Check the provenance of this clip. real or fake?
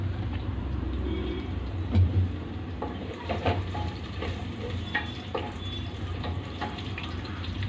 fake